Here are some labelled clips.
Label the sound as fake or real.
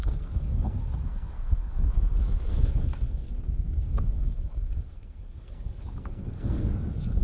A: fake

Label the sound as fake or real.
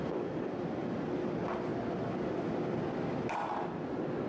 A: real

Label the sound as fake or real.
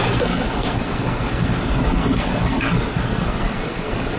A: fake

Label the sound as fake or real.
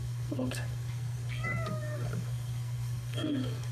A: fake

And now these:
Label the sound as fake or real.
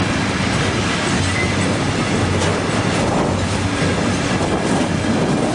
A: real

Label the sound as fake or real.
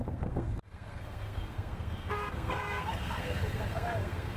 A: fake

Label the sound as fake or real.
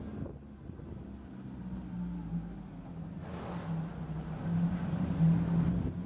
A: real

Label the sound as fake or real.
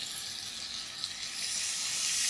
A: real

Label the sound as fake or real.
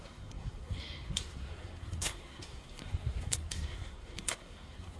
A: fake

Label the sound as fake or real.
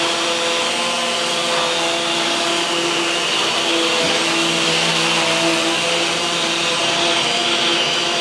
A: real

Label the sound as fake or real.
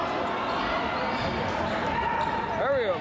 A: real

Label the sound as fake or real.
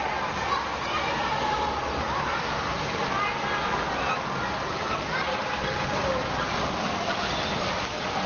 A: real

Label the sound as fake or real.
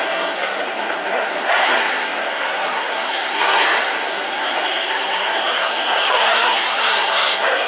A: fake